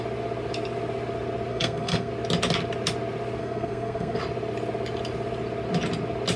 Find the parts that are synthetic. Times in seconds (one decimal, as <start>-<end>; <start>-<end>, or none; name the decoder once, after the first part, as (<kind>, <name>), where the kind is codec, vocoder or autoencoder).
1.5-2.1 (codec, SNAC); 3.4-4.2